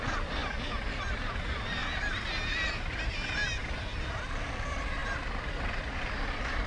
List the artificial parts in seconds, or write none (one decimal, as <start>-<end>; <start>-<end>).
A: 0.0-0.4; 1.0-1.8; 2.5-6.7